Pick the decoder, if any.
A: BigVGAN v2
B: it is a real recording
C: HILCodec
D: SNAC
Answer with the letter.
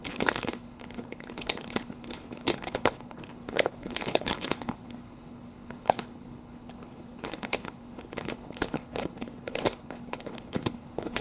C